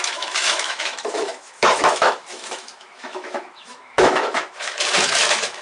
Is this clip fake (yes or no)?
yes